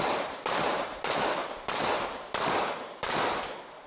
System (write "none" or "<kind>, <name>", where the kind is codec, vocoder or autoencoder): vocoder, BigVGAN v2